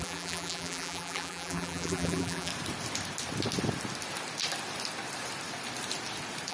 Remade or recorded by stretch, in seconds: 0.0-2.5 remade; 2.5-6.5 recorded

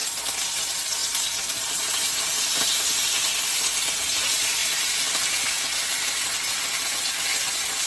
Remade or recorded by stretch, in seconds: 0.0-4.6 recorded; 4.6-6.8 remade; 6.8-7.9 recorded

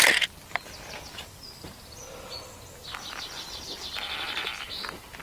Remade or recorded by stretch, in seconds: 0.0-5.2 recorded

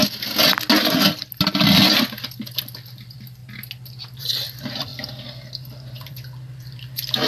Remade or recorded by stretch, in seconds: 0.0-2.6 recorded; 2.6-3.4 remade; 3.4-4.2 recorded; 4.2-7.3 remade

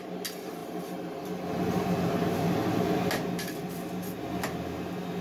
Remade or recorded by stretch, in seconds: 0.0-5.2 recorded